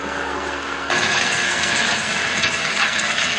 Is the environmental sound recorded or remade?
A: remade